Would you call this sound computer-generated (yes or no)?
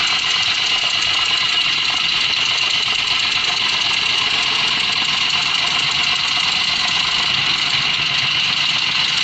no